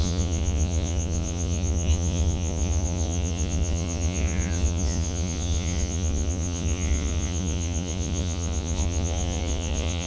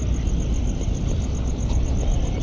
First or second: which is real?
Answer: second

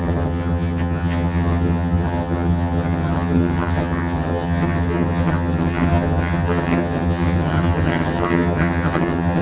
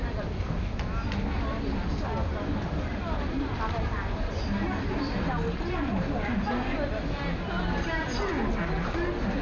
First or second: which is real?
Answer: second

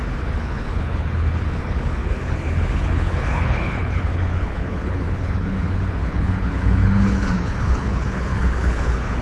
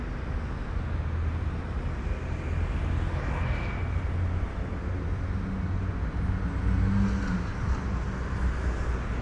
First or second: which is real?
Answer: second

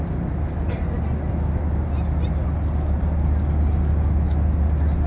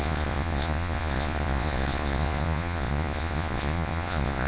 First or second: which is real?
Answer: first